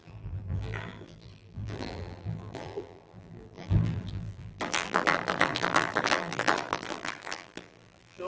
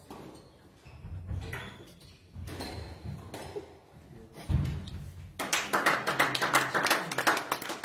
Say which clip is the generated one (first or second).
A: first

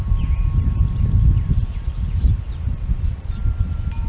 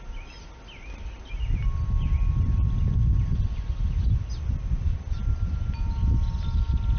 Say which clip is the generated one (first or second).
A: first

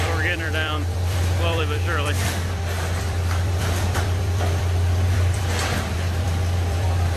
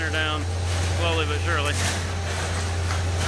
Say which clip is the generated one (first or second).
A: first